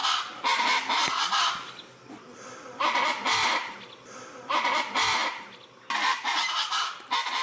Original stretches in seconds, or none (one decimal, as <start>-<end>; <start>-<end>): 0.0-7.4